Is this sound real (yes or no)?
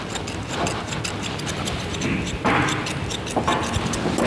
yes